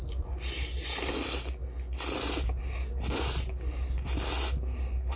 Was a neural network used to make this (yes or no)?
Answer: no